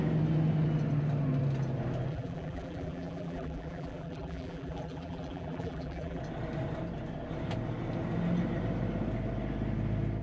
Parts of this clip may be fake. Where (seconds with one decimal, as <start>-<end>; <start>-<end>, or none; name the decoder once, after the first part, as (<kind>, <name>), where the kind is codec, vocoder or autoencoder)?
2.1-6.2 (vocoder, BigVGAN v2)